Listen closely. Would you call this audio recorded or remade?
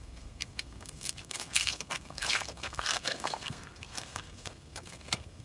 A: remade